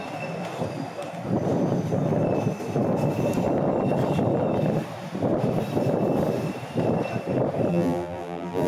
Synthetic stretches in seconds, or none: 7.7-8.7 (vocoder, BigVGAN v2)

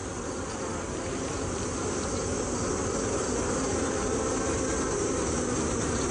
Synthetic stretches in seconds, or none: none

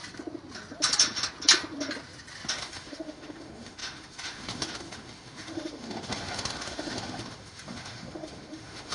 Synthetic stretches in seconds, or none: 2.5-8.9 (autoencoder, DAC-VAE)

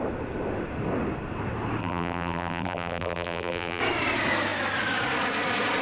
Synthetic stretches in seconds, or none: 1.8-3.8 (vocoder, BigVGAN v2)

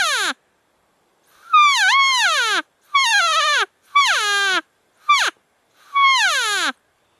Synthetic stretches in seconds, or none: 3.1-4.0 (vocoder, BigVGAN v2)

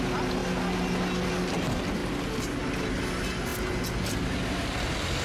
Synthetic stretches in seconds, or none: none

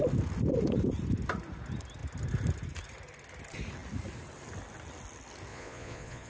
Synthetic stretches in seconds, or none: 5.5-6.3 (vocoder, Vocos)